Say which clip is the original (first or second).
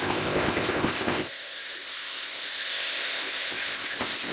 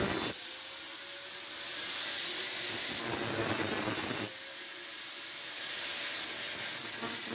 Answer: second